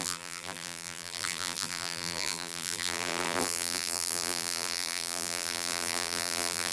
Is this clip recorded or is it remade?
remade